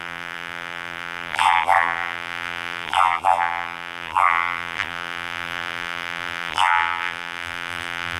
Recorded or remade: remade